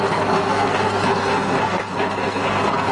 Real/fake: fake